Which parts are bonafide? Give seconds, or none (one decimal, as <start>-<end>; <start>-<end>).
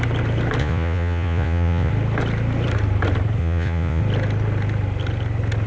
0.0-0.6; 1.9-3.4; 4.0-5.7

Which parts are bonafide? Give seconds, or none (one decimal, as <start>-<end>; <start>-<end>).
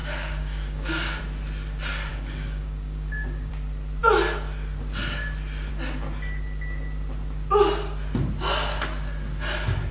1.2-2.1; 3.5-9.9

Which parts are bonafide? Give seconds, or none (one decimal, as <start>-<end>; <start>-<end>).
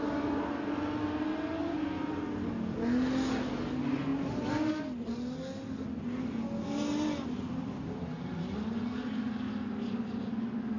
0.0-10.8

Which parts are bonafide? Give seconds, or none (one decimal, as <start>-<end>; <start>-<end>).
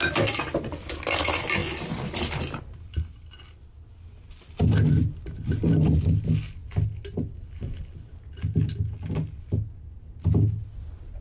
0.0-11.2